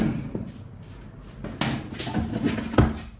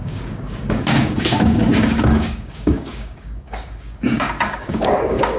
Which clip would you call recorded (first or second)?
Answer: first